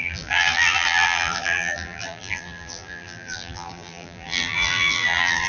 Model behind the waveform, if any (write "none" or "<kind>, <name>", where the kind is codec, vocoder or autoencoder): vocoder, BigVGAN v2